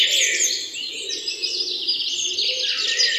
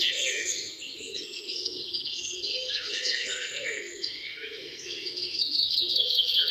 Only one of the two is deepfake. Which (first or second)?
second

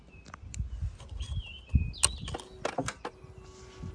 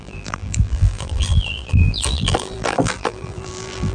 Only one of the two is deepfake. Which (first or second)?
second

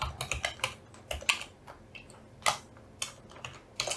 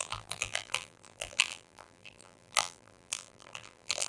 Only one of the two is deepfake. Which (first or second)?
second